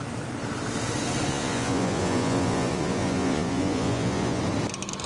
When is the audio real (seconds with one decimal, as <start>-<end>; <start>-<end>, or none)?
0.0-1.3; 4.4-5.1